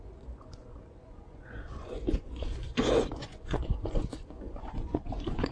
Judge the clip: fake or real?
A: fake